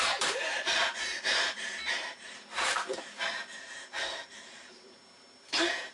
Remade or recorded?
remade